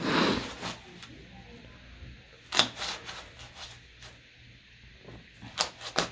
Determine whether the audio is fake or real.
real